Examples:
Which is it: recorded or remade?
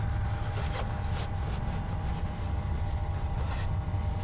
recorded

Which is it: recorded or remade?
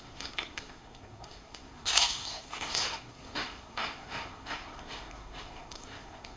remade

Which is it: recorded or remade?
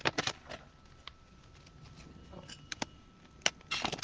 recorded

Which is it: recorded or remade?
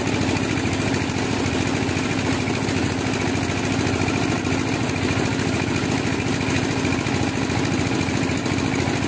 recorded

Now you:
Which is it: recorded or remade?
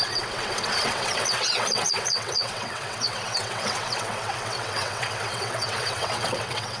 remade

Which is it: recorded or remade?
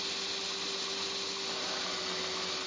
recorded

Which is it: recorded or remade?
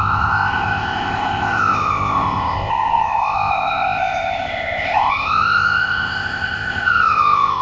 remade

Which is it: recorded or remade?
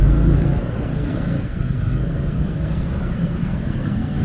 remade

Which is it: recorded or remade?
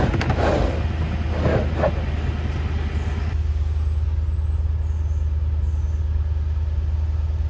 recorded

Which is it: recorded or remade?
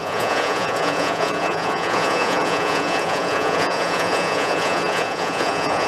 remade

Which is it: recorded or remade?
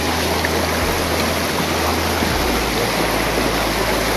recorded